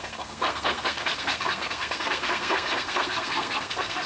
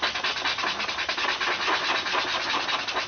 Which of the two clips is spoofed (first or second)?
first